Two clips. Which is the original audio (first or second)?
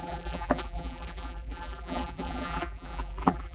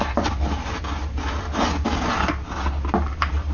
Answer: second